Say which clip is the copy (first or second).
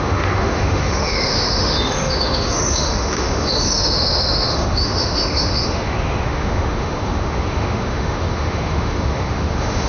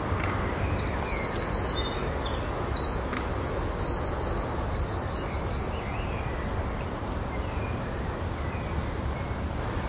first